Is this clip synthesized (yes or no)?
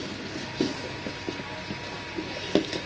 no